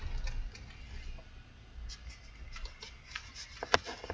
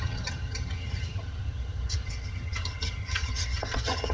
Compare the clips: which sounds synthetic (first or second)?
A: second